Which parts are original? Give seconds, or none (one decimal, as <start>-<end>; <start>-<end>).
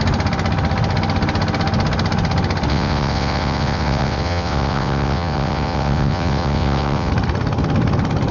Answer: 0.0-2.7; 7.1-8.3